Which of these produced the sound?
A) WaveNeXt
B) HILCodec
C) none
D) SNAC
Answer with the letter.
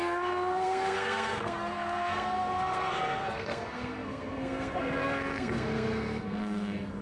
D